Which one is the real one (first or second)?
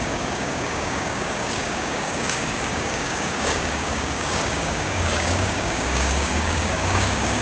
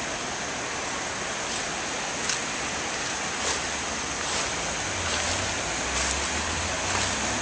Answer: second